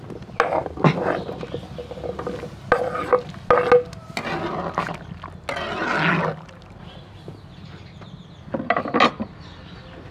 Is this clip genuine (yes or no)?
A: yes